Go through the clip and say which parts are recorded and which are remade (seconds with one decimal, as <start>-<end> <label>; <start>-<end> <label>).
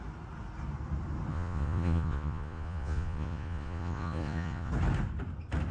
0.0-1.3 recorded; 1.3-4.7 remade; 4.7-5.7 recorded